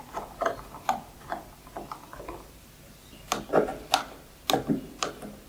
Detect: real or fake real